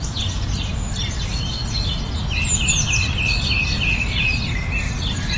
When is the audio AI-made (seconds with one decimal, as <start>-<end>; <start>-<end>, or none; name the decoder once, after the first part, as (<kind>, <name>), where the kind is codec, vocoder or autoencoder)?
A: none

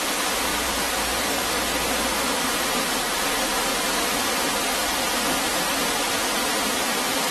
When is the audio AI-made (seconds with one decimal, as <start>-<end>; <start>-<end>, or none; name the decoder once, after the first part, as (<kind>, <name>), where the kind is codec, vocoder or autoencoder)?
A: 0.5-1.2 (vocoder, BigVGAN v2); 3.7-4.5

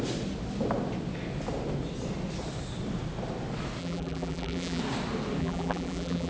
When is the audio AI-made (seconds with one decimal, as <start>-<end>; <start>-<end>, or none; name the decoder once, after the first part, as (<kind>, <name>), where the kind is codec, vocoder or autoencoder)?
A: 3.8-4.8 (vocoder, BigVGAN v2); 5.4-6.3

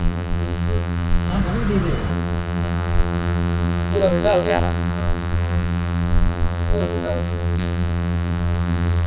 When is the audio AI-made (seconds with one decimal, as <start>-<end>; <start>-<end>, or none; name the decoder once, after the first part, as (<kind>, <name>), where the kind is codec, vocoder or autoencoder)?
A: 0.0-1.3 (vocoder, BigVGAN v2); 2.1-9.1

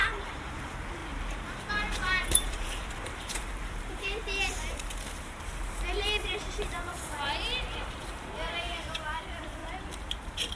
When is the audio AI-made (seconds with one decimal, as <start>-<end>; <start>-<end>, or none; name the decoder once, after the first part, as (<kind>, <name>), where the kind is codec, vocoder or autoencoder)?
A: 0.0-9.6 (vocoder, BigVGAN v2); 10.1-10.6

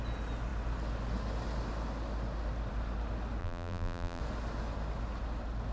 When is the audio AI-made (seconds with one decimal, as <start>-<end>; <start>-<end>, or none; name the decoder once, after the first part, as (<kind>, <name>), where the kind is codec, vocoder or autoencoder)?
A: 3.4-4.2 (vocoder, BigVGAN v2)

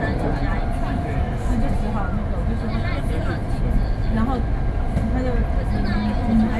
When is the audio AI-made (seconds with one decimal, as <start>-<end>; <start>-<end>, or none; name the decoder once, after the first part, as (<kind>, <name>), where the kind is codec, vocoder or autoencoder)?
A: 5.4-5.9 (vocoder, BigVGAN v2)

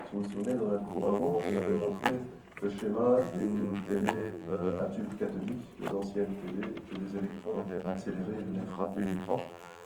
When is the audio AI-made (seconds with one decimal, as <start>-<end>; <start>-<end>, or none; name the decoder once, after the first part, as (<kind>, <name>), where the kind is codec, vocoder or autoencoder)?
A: 0.9-2.1 (vocoder, BigVGAN v2); 3.2-4.8; 7.3-8.0; 8.7-9.9